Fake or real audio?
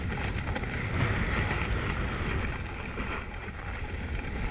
real